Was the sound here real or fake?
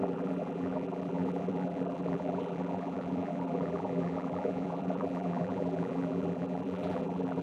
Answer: fake